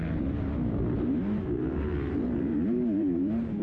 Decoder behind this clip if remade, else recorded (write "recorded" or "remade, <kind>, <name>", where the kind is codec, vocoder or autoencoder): remade, vocoder, BigVGAN v2